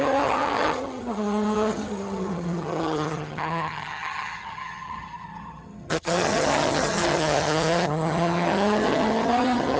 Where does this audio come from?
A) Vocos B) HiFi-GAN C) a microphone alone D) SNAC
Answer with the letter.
B